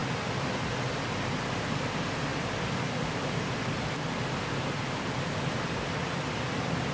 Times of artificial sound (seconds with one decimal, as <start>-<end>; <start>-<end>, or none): 1.2-6.9